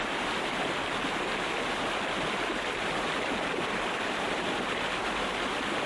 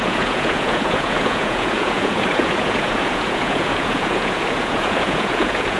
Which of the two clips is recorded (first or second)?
first